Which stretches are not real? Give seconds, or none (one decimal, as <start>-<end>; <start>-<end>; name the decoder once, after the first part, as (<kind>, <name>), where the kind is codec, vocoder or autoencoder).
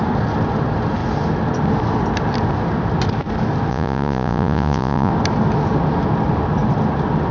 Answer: 3.7-5.1 (vocoder, Vocos)